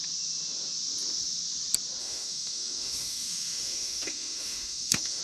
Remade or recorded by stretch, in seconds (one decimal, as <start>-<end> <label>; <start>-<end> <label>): 0.0-2.0 recorded; 2.0-5.2 remade